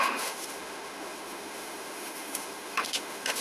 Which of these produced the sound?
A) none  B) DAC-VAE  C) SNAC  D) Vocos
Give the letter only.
B